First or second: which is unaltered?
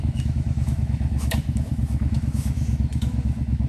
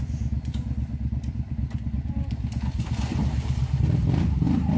second